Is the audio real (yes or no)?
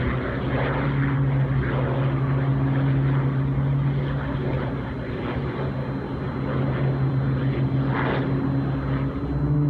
yes